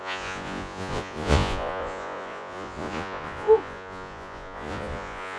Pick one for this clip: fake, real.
fake